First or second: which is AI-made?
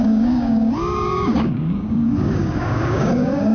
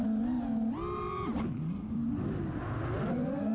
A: first